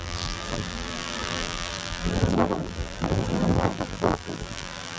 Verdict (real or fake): fake